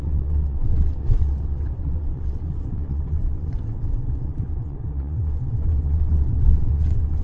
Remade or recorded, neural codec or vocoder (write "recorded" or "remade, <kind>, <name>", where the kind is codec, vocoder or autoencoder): remade, vocoder, WaveNeXt